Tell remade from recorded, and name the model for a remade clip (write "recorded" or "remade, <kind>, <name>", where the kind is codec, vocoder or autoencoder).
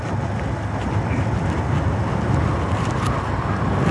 recorded